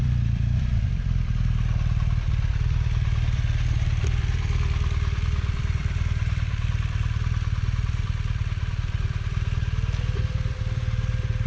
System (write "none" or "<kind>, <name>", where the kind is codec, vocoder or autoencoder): vocoder, BigVGAN v2